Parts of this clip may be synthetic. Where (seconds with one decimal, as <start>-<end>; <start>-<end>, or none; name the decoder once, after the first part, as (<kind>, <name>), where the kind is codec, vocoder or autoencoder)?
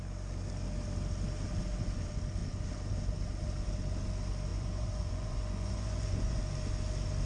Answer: 4.5-6.4 (vocoder, Vocos)